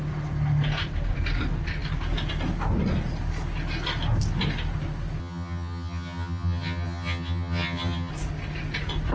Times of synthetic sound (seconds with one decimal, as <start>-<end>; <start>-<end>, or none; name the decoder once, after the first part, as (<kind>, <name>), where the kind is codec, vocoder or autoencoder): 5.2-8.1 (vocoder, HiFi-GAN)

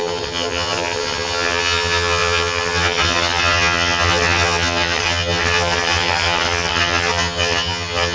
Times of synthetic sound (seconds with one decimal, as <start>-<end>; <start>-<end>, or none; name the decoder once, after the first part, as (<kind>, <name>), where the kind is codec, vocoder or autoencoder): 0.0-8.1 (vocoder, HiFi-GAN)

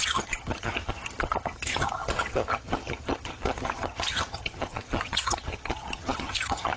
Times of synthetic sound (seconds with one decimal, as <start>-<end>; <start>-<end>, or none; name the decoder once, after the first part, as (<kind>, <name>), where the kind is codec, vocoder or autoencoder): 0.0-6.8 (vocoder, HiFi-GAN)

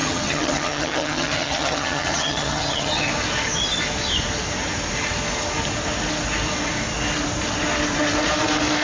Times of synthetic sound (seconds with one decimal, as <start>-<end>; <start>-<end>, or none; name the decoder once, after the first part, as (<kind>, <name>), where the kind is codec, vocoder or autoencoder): 0.0-3.1 (vocoder, HiFi-GAN)

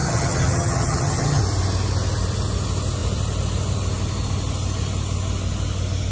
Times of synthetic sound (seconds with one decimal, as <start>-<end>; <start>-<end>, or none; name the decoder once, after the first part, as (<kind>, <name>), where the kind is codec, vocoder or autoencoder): 0.0-1.4 (vocoder, HiFi-GAN)

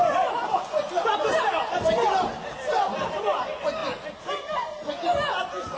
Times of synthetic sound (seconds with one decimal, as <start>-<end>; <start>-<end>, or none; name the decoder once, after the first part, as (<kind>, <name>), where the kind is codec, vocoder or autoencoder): none

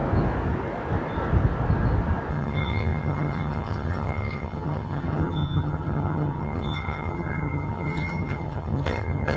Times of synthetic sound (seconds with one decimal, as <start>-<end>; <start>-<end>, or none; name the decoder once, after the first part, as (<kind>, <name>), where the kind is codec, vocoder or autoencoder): 2.3-9.4 (vocoder, HiFi-GAN)

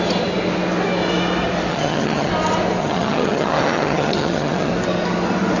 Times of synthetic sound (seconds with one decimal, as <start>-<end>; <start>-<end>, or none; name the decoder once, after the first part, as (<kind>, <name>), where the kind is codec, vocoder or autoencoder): 1.7-2.3 (vocoder, HiFi-GAN); 2.8-4.7